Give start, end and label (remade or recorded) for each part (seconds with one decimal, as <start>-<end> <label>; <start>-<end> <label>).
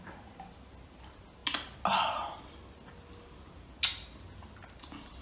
0.0-5.2 recorded